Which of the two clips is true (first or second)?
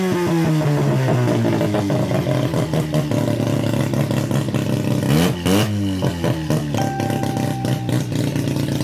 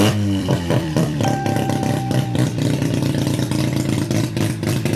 first